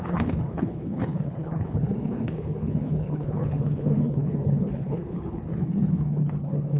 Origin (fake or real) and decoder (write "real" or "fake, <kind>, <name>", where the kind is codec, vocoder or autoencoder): fake, codec, HILCodec